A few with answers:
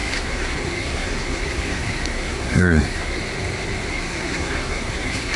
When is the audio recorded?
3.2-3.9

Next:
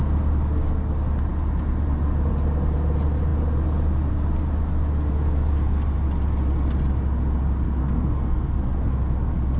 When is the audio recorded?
0.0-7.8; 8.6-9.6

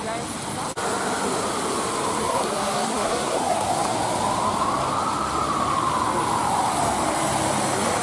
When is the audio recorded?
0.0-2.2; 3.7-8.0